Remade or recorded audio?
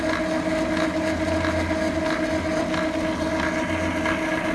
recorded